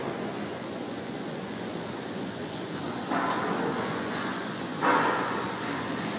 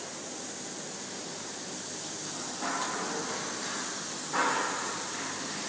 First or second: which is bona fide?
second